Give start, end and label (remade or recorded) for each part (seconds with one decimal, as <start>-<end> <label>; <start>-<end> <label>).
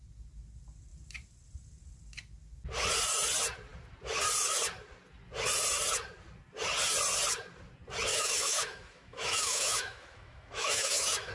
0.0-8.1 recorded; 8.1-11.3 remade